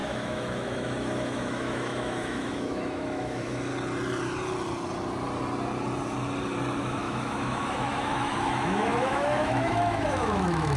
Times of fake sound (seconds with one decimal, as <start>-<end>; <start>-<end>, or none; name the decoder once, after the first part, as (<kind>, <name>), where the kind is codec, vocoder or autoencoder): 0.0-3.7 (autoencoder, DAC-VAE); 6.8-10.8

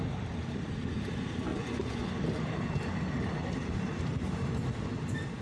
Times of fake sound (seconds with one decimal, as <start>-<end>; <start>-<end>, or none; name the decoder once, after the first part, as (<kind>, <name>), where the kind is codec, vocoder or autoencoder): 1.5-2.1 (vocoder, Vocos)

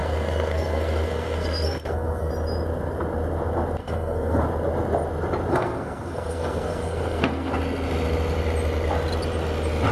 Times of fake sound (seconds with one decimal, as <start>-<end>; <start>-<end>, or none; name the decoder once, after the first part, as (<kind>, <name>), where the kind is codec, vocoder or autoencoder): 0.0-2.3 (codec, SNAC); 3.8-4.4; 5.5-7.6

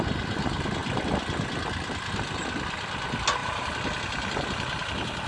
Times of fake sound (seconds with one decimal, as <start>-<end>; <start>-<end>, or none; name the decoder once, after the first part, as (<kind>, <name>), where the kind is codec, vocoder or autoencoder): none

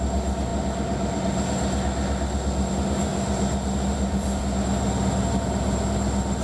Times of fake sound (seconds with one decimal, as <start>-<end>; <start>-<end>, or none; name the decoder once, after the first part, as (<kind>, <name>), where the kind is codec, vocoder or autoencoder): 3.1-4.4 (vocoder, BigVGAN v2)